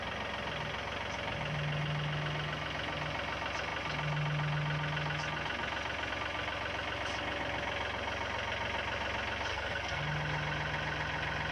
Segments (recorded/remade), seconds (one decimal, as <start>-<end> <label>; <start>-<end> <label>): 0.0-9.5 recorded; 9.5-10.0 remade; 10.0-11.5 recorded